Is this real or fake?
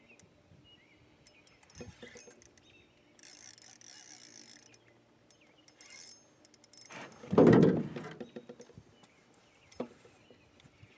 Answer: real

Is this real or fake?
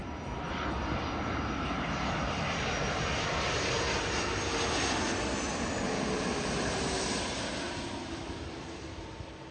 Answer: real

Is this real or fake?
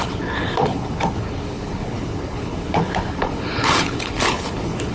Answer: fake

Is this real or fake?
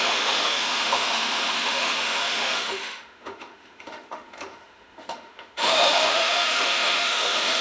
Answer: fake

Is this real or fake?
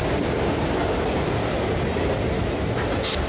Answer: real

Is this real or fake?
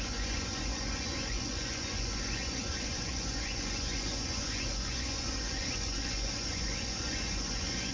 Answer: fake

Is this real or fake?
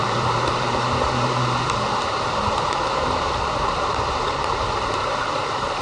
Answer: fake